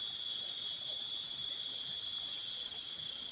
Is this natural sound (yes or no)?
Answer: yes